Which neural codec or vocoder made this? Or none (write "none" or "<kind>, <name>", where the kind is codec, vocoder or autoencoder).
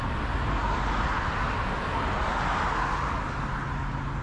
none